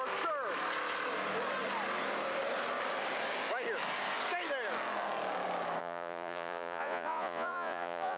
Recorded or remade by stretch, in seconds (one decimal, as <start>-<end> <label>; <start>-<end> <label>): 0.0-5.8 recorded; 5.8-8.2 remade